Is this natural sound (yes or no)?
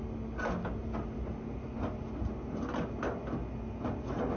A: yes